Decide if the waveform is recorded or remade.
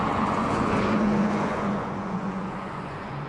remade